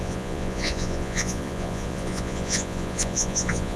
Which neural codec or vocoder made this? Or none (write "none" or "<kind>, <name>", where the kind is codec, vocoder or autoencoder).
vocoder, Vocos